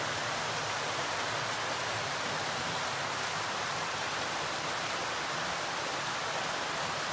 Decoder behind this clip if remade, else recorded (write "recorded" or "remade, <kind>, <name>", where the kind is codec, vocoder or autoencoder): recorded